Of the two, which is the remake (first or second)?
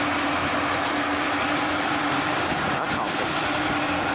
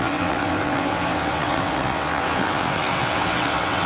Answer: second